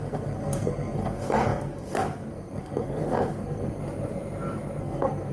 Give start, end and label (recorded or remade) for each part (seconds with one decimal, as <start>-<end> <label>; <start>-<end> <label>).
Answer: 0.0-3.8 remade; 3.8-4.8 recorded; 4.8-5.3 remade